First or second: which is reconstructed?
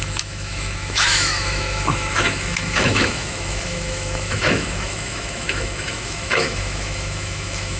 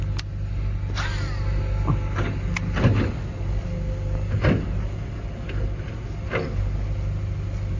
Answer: first